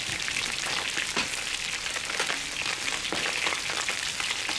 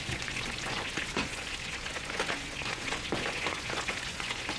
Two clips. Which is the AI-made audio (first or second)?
second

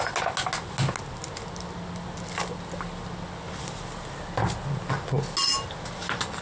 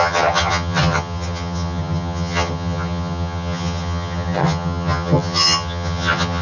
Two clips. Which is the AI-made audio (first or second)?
second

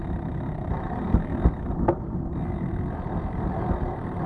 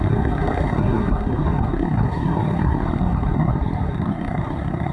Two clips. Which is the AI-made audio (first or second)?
second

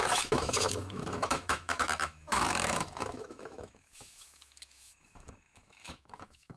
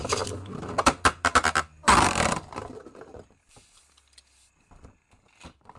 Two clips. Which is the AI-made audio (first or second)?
first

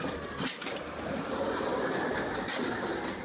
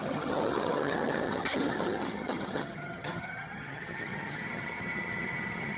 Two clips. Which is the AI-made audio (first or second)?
second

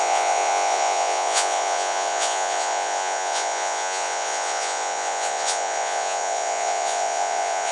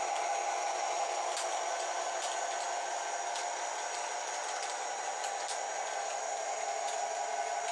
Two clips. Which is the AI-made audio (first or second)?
first